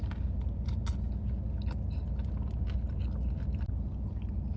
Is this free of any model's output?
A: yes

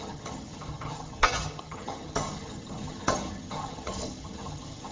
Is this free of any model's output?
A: no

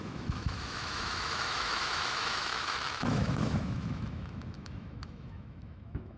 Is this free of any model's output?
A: no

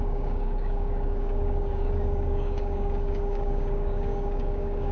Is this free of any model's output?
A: no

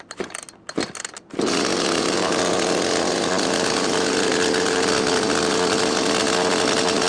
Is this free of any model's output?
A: yes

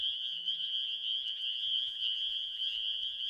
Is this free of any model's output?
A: no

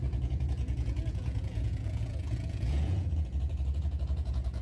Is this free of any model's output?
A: no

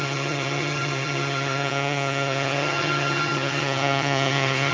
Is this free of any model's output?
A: no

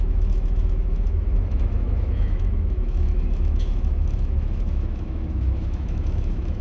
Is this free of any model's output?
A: no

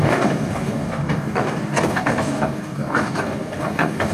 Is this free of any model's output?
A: no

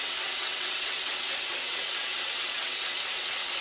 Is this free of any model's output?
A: no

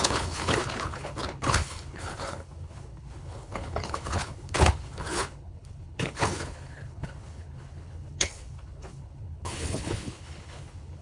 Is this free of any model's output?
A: no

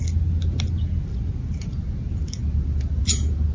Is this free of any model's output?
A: yes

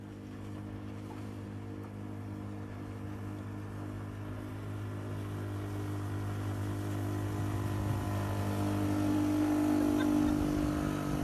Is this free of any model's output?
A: yes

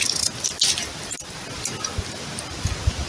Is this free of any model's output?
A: yes